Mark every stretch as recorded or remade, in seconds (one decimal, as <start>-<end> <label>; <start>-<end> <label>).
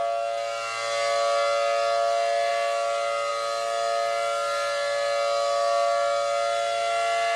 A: 0.0-7.4 recorded